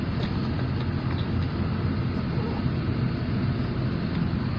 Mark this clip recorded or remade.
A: recorded